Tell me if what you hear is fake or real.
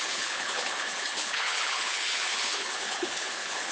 fake